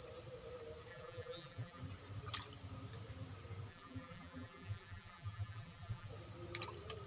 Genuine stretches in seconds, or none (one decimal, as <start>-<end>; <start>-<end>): 0.0-0.9; 1.8-3.7; 6.1-7.1